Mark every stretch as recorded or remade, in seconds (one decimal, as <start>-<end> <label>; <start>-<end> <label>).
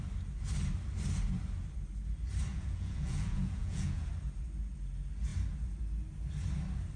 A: 0.0-2.5 recorded; 2.5-4.1 remade; 4.1-7.0 recorded